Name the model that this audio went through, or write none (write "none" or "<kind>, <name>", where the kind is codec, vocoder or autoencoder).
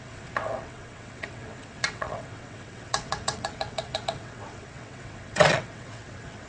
vocoder, WaveNeXt